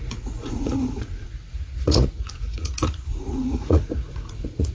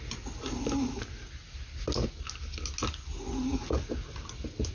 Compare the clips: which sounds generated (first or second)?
first